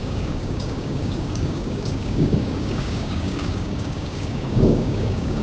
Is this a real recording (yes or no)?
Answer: no